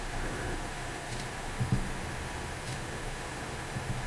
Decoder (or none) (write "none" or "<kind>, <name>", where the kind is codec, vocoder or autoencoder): autoencoder, DAC-VAE